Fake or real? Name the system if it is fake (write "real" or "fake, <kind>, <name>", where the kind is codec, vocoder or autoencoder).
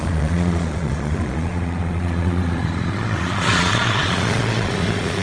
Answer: fake, vocoder, Vocos